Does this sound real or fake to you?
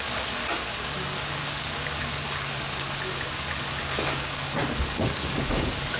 fake